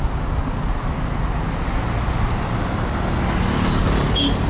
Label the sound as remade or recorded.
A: recorded